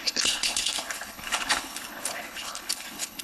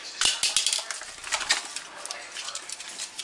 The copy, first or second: first